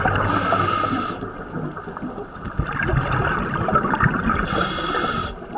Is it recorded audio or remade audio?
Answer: recorded